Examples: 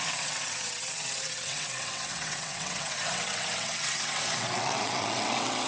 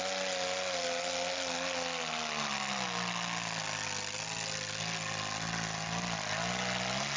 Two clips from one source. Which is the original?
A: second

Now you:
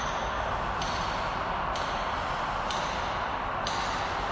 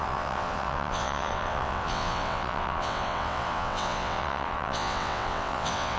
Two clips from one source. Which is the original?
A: first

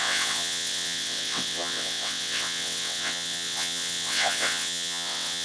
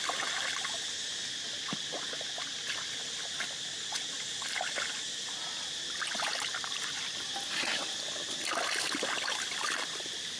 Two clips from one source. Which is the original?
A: second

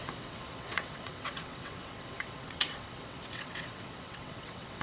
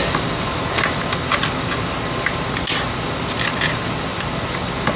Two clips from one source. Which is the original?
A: second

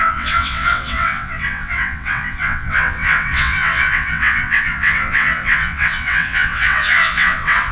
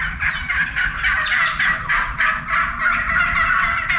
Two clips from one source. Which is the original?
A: second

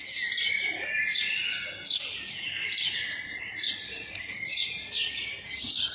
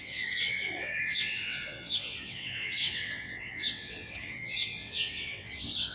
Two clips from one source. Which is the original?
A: first